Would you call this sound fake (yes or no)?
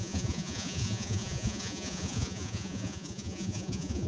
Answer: yes